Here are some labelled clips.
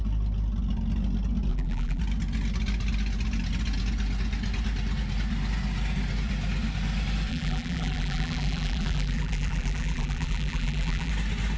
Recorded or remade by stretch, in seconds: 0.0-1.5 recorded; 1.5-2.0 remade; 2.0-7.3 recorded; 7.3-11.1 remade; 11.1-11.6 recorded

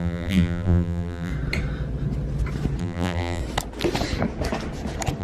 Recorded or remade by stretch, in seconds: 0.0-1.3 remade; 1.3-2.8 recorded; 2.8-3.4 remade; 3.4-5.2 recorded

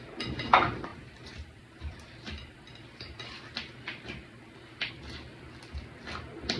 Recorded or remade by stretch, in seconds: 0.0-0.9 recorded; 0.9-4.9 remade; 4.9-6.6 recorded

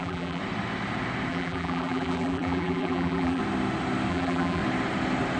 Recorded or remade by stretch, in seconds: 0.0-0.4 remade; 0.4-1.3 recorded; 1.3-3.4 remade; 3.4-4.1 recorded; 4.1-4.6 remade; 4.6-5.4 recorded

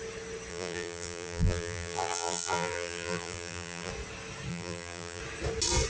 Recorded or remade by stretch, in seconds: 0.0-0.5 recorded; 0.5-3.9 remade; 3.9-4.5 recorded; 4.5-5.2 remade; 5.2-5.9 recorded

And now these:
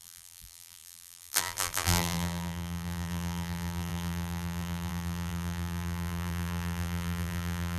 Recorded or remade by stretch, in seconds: 0.0-7.8 remade

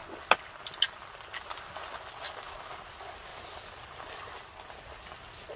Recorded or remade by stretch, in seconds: 0.0-3.3 recorded; 3.3-4.4 remade; 4.4-5.6 recorded